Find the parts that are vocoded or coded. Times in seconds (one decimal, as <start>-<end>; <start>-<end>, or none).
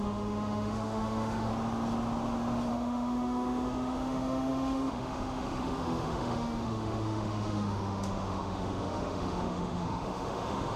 0.0-1.5; 2.7-10.8